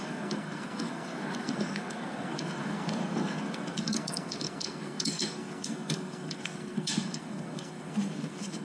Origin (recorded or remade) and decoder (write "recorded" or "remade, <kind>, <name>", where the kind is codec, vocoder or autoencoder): remade, codec, SNAC